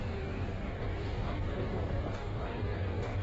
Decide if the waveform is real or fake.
fake